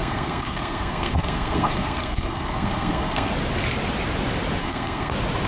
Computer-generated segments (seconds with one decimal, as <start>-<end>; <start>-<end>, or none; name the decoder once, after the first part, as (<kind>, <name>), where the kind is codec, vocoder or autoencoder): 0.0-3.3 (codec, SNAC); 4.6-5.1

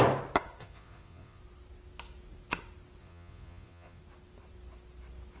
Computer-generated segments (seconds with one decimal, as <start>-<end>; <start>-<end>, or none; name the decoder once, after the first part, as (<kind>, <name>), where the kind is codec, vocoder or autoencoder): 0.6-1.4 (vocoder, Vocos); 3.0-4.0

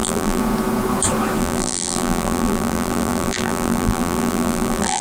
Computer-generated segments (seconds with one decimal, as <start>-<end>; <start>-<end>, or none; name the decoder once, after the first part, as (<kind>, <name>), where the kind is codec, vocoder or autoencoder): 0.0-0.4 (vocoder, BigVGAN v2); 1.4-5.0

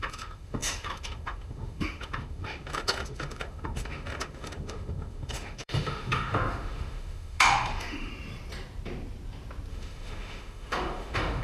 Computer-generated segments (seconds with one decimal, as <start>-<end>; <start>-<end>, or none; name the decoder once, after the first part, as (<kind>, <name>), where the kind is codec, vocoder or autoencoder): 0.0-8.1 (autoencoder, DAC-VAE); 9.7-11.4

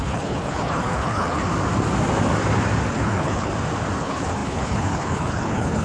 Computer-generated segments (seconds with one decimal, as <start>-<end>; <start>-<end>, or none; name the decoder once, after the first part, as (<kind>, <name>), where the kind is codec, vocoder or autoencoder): 0.0-1.5 (codec, HILCodec); 2.9-3.5; 4.0-5.8